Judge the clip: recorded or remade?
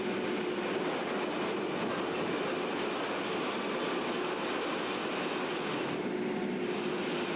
recorded